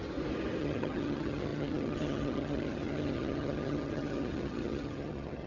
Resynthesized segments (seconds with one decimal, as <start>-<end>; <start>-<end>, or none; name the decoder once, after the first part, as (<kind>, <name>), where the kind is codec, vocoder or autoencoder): 0.6-5.5 (vocoder, HiFi-GAN)